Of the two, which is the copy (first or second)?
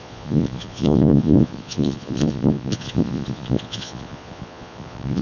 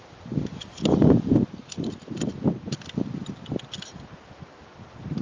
first